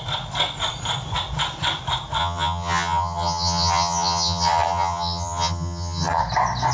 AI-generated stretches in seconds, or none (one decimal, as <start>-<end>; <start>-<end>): 2.2-6.2

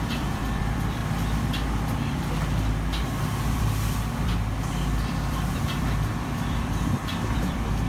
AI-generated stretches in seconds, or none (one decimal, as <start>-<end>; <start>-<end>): 0.0-1.0; 3.2-7.9

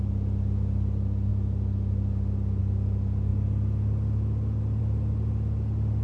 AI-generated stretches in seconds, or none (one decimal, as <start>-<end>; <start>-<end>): none